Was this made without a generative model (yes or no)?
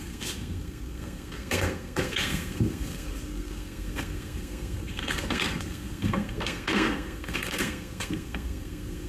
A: no